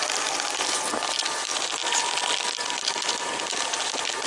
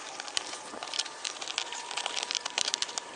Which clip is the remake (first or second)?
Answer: second